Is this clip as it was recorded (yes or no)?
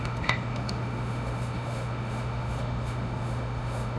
no